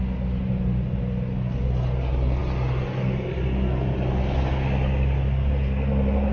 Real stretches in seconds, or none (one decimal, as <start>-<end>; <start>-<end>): 0.0-6.3